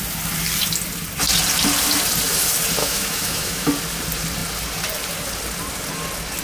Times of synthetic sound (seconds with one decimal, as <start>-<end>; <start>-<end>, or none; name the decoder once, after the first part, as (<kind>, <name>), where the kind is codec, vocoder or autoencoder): 2.8-3.7 (autoencoder, DAC-VAE)